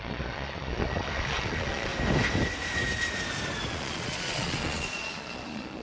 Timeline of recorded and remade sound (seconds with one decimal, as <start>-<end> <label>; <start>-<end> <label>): 0.0-1.9 remade; 1.9-3.7 recorded; 3.7-5.8 remade

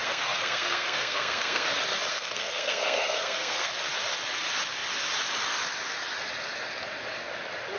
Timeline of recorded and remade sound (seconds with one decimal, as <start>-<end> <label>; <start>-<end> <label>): 0.0-1.7 remade; 1.7-2.1 recorded; 2.1-3.7 remade; 3.7-7.8 recorded

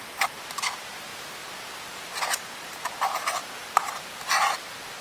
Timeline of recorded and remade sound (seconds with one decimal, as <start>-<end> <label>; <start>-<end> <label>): 0.0-1.1 recorded; 1.1-2.2 remade; 2.2-5.0 recorded